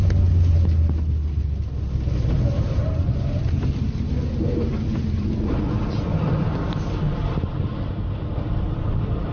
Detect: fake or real real